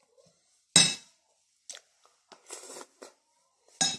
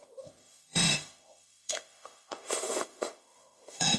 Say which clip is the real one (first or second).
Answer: first